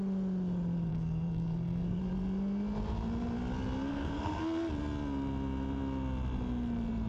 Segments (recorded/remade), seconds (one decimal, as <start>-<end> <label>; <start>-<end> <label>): 0.0-0.9 recorded; 0.9-2.0 remade; 2.0-3.9 recorded; 3.9-4.4 remade; 4.4-7.1 recorded